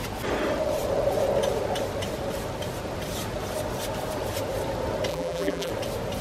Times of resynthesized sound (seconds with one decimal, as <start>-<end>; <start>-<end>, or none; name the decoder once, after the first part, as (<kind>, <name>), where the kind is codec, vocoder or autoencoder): 5.1-5.7 (vocoder, BigVGAN v2)